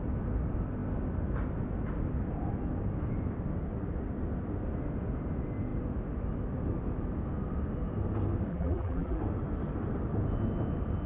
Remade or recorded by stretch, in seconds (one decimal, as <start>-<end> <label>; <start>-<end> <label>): 0.0-8.5 recorded; 8.5-9.2 remade; 9.2-11.1 recorded